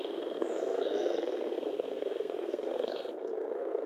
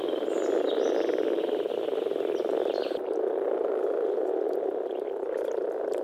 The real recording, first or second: second